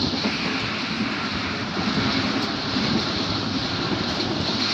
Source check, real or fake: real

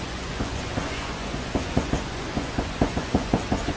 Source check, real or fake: fake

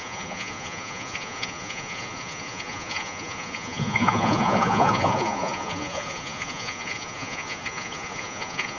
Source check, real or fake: fake